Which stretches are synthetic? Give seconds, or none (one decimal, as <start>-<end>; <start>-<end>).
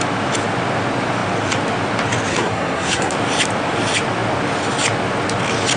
2.3-3.1